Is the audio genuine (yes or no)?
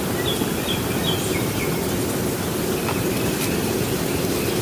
yes